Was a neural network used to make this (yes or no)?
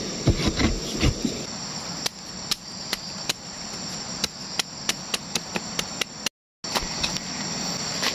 no